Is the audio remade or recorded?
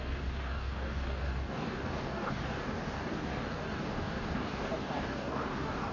remade